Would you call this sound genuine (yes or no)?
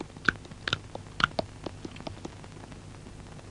yes